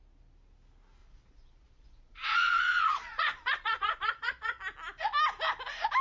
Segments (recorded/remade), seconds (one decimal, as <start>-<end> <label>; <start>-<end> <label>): 0.0-1.0 recorded; 1.0-4.6 remade; 4.6-6.0 recorded